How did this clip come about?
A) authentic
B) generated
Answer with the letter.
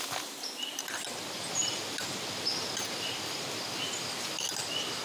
A